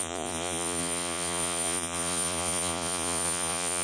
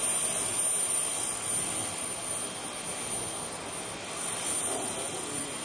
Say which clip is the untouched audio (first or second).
second